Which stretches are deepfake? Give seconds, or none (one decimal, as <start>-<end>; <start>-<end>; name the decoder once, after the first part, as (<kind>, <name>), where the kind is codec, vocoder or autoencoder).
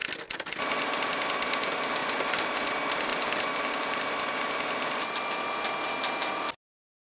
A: none